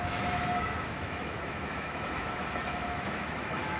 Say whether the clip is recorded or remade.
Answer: remade